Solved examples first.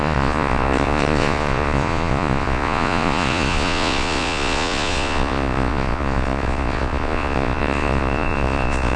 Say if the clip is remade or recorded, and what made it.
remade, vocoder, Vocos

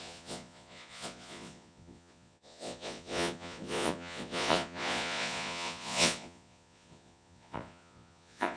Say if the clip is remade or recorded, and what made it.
remade, vocoder, Vocos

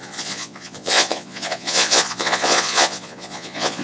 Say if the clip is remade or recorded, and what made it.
remade, vocoder, Vocos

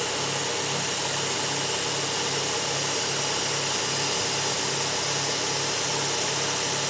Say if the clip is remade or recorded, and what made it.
recorded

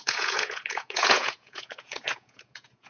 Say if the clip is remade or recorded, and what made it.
remade, vocoder, Vocos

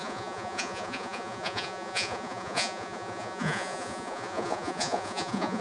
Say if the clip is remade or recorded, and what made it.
remade, vocoder, Vocos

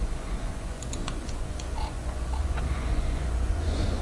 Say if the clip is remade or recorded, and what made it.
remade, vocoder, Vocos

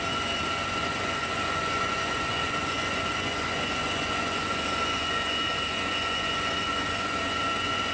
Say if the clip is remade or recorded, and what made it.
remade, vocoder, Vocos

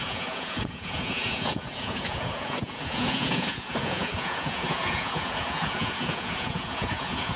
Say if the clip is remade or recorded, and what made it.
remade, vocoder, Vocos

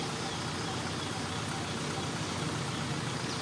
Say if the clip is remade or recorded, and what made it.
recorded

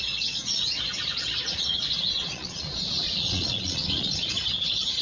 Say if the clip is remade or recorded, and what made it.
remade, vocoder, Vocos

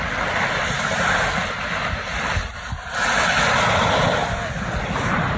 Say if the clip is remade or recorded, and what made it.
recorded